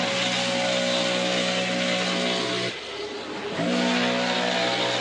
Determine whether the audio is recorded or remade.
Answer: recorded